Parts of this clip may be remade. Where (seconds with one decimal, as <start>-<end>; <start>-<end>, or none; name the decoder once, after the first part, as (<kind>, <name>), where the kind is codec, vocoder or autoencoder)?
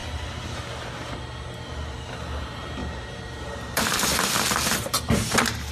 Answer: 2.8-5.2 (vocoder, BigVGAN v2)